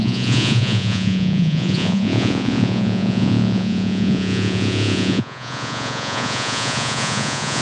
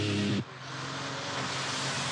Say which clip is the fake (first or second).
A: first